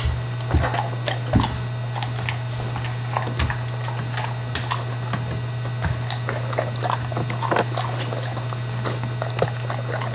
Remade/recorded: recorded